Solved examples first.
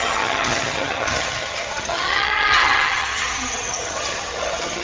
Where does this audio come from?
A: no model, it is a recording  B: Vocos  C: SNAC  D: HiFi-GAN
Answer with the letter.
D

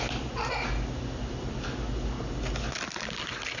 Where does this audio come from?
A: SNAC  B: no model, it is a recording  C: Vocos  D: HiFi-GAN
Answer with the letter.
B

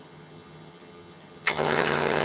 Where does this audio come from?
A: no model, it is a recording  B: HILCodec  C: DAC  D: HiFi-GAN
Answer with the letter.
D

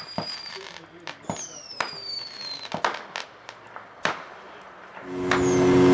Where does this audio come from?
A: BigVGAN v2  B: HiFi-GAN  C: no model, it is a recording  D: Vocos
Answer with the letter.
C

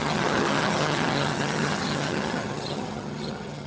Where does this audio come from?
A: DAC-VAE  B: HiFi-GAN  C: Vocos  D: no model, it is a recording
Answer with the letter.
B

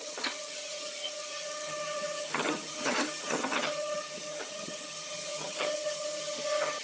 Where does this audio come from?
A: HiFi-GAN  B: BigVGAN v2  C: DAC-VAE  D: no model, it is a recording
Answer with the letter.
A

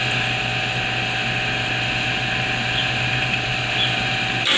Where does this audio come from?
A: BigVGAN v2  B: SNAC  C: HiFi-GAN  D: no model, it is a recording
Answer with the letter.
D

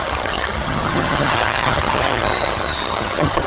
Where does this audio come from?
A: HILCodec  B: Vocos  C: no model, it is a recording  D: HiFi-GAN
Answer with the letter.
D